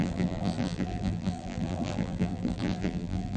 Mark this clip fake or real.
fake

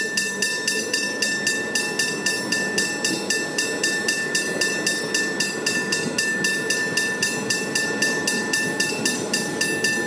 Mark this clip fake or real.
real